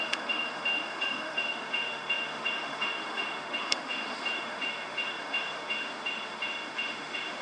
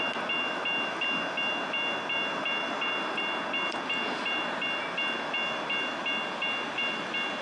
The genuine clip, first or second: second